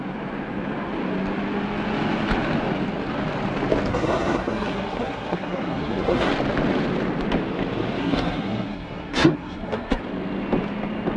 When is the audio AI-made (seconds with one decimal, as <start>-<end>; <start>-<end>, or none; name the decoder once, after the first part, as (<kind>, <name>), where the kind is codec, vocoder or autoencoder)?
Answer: 3.9-6.3 (codec, SNAC); 8.0-10.0